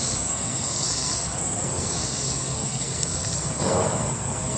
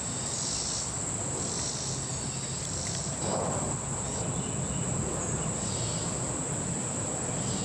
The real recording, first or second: second